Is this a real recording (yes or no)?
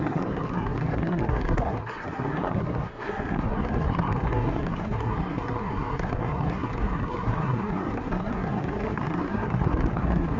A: no